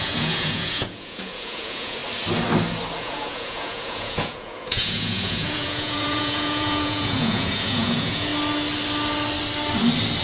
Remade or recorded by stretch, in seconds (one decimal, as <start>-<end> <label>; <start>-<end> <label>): 0.0-2.0 remade; 2.0-3.0 recorded; 3.0-8.3 remade; 8.3-10.2 recorded

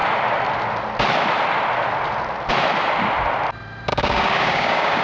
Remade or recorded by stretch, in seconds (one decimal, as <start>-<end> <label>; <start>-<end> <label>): 0.0-3.9 recorded; 3.9-5.0 remade

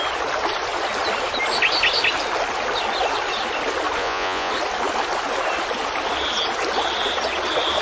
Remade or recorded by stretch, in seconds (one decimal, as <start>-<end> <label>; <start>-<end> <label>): 0.0-4.0 recorded; 4.0-4.5 remade; 4.5-7.8 recorded

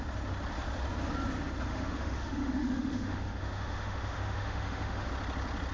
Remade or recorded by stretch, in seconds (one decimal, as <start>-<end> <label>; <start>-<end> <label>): 0.0-1.7 recorded; 1.7-5.1 remade; 5.1-5.7 recorded

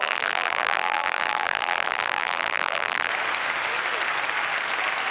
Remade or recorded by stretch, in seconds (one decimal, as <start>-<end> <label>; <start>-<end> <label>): 0.0-3.1 remade; 3.1-5.1 recorded

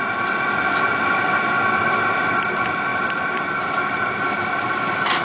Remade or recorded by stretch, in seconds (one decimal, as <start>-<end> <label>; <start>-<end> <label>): 0.0-5.2 remade

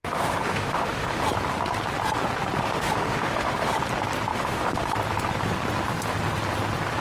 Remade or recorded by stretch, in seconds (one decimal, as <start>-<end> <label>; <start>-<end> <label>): 0.0-1.2 remade; 1.2-2.6 recorded; 2.6-3.7 remade; 3.7-4.3 recorded; 4.3-4.9 remade; 4.9-7.0 recorded